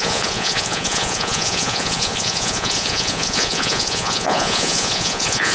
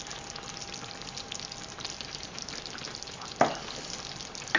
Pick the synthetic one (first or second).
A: first